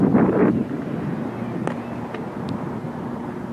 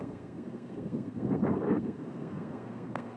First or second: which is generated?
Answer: second